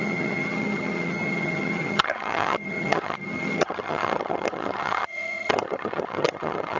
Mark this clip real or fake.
fake